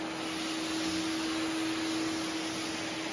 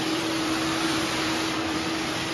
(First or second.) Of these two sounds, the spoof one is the second